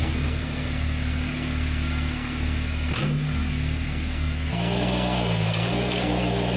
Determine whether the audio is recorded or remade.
remade